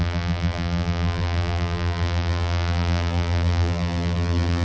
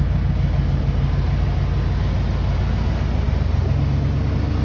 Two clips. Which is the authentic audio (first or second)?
second